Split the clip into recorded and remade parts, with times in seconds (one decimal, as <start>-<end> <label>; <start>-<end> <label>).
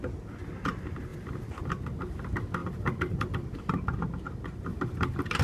0.0-1.1 recorded; 1.1-1.7 remade; 1.7-2.6 recorded; 2.6-3.7 remade; 3.7-4.7 recorded; 4.7-5.4 remade